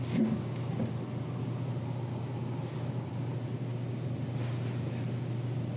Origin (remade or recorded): recorded